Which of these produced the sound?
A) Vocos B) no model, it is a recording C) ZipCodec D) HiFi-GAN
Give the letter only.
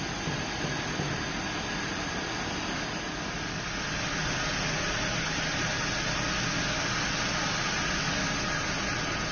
B